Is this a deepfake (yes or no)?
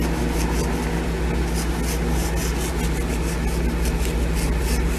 no